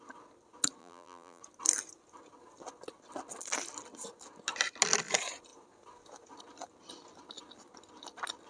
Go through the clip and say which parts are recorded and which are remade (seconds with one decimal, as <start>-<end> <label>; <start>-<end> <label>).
0.0-0.8 recorded; 0.8-1.4 remade; 1.4-8.5 recorded

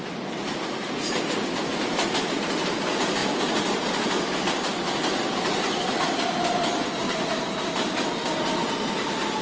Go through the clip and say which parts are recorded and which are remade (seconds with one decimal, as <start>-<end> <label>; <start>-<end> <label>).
0.0-3.2 recorded; 3.2-6.0 remade; 6.0-9.4 recorded

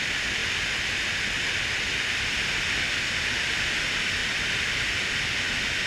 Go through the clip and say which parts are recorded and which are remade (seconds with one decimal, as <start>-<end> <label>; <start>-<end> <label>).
0.0-4.2 recorded; 4.2-5.3 remade; 5.3-5.9 recorded

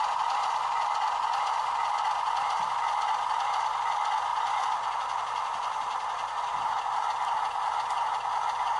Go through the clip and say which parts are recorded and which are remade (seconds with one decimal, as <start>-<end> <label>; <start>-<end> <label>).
0.0-4.3 recorded; 4.3-6.8 remade; 6.8-8.8 recorded

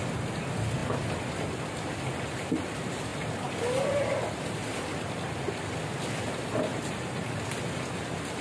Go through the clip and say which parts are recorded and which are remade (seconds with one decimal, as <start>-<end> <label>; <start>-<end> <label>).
0.0-8.4 recorded

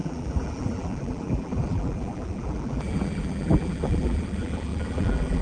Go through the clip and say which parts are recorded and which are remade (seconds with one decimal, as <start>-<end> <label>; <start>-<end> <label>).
0.0-5.4 remade